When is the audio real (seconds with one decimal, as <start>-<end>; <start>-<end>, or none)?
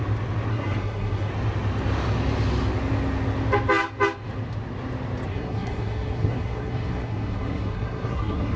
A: 0.0-0.5; 1.3-5.3